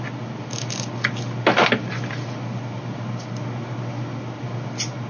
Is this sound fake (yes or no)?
no